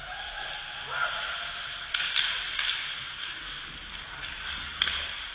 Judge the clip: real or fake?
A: real